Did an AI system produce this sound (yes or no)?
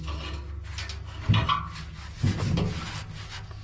no